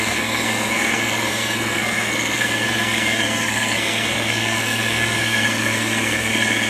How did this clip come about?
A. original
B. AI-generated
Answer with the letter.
B